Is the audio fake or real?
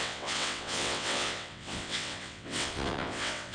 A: fake